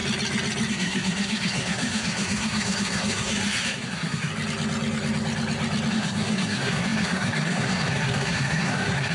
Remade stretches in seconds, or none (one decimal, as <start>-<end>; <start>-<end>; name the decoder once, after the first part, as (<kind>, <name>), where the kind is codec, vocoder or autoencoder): 0.7-4.3 (codec, SNAC); 5.9-9.1